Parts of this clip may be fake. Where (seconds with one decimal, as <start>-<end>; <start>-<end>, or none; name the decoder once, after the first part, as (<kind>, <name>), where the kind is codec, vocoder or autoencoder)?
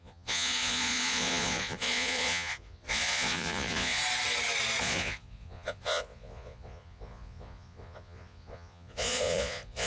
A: 0.0-4.0 (vocoder, Vocos); 4.8-9.9